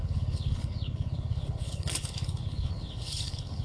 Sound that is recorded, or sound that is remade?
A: remade